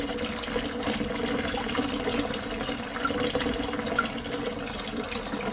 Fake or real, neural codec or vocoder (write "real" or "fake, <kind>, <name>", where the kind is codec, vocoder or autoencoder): real